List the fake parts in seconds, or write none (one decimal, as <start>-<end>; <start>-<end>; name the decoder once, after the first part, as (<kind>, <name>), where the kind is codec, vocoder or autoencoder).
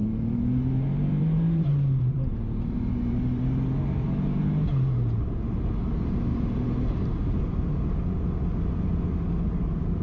0.0-5.2 (vocoder, BigVGAN v2); 6.3-7.7